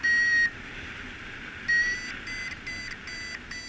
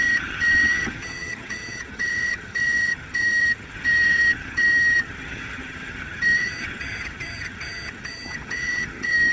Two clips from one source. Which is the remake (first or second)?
second